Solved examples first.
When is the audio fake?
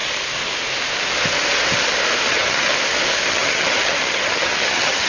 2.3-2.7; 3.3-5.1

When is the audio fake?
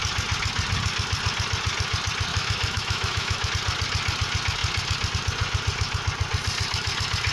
2.3-3.5